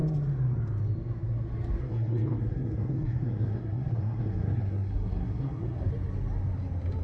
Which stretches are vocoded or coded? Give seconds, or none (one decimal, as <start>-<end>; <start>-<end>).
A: 1.8-5.9